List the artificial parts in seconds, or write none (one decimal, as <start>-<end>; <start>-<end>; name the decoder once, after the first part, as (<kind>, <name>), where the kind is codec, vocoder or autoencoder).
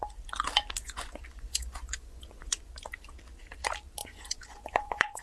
0.8-2.7 (vocoder, Vocos); 4.0-5.2